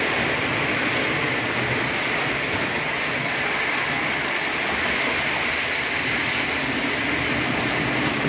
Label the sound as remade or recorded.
recorded